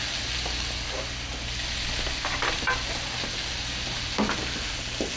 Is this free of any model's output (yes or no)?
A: yes